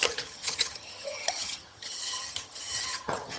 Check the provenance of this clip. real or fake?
fake